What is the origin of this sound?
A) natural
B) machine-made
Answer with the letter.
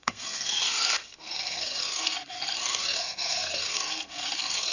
B